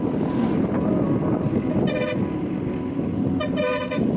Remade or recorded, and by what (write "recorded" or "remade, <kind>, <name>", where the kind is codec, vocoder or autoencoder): recorded